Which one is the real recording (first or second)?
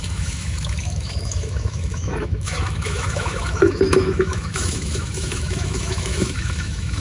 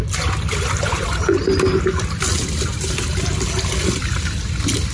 second